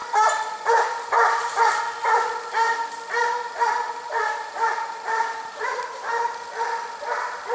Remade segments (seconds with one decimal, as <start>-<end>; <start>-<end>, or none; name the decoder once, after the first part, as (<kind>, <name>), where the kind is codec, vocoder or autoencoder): 0.0-1.6 (vocoder, BigVGAN v2); 3.3-6.3